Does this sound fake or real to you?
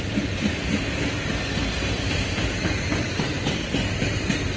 real